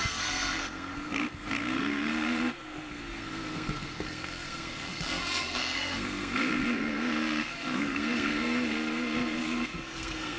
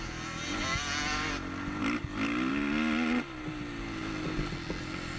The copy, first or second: first